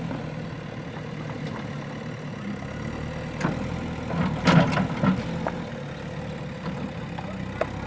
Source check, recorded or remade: recorded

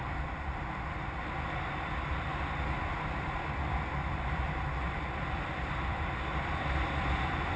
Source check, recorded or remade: recorded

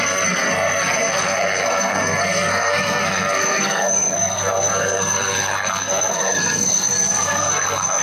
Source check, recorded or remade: remade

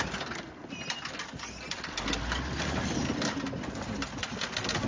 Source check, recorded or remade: recorded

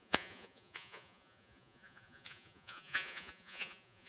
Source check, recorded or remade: remade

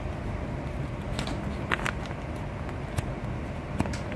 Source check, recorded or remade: recorded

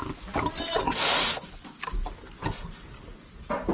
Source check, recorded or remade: recorded